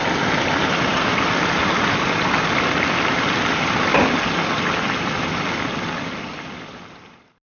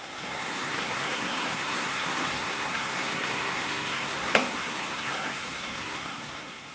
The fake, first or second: second